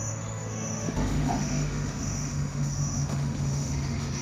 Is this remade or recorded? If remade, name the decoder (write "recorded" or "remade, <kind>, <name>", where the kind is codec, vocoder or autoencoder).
remade, autoencoder, DAC-VAE